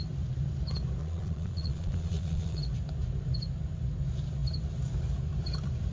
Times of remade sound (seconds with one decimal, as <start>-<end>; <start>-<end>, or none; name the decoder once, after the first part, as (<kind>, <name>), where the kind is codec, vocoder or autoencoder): 1.0-2.6 (vocoder, Vocos)